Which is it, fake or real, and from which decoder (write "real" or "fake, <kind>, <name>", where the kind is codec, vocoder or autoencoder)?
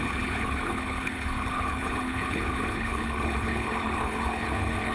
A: fake, codec, HILCodec